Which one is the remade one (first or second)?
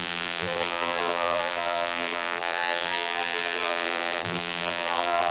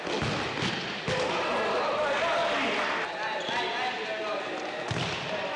first